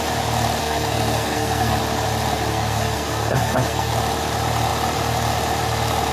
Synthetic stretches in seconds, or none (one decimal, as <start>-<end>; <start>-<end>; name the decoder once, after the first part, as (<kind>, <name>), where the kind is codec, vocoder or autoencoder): 0.6-1.8 (codec, SNAC); 2.5-3.9